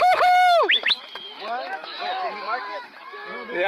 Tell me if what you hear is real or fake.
fake